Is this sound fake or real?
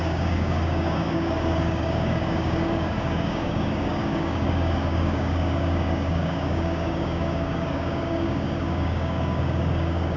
fake